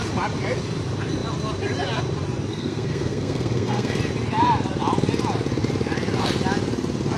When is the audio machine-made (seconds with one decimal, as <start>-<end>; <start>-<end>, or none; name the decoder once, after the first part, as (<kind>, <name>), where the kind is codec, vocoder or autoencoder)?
2.5-4.0 (codec, SNAC)